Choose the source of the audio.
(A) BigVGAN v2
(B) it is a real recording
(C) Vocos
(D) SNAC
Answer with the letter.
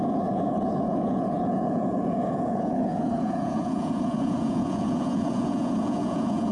C